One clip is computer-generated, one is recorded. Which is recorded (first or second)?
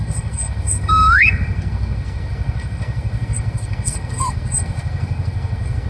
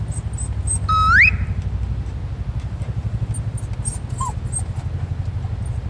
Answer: second